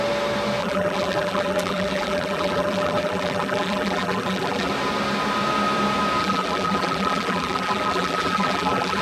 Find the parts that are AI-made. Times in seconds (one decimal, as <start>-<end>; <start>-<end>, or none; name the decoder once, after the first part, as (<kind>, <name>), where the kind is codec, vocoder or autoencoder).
0.6-4.7 (vocoder, BigVGAN v2); 6.2-9.0